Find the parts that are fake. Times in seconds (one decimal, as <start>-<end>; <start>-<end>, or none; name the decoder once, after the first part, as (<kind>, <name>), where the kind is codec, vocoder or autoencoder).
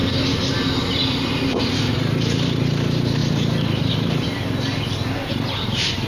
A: 1.6-6.1 (vocoder, BigVGAN v2)